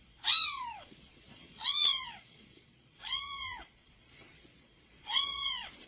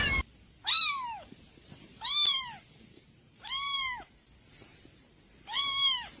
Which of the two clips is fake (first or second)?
first